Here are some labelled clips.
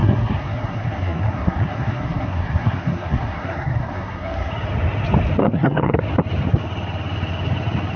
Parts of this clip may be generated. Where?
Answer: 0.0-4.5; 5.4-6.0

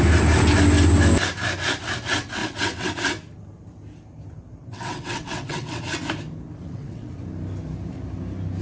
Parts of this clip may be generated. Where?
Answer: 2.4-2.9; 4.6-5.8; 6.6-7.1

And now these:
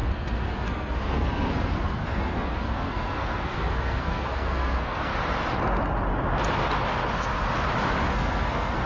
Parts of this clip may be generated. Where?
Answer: 0.0-5.1; 8.1-8.9

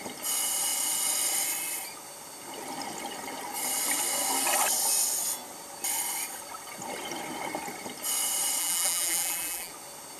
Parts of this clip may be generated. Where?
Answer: 8.6-9.7

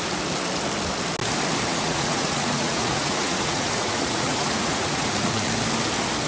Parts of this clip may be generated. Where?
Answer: 1.7-5.5